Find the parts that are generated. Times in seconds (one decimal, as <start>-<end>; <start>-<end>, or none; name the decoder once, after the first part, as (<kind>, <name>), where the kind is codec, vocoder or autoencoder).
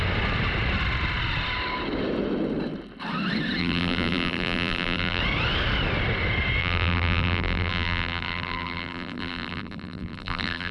3.6-5.2 (vocoder, BigVGAN v2); 6.6-10.7